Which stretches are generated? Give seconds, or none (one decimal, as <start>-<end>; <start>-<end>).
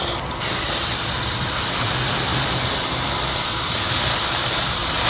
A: none